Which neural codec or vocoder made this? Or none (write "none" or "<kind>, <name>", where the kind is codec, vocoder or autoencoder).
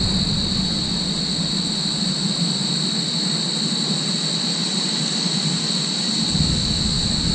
none